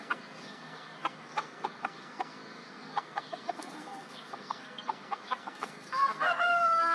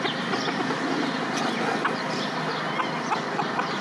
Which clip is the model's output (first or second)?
first